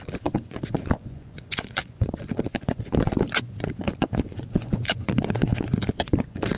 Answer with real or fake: fake